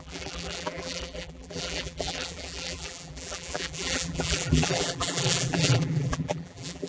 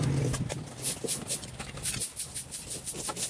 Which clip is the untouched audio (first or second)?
second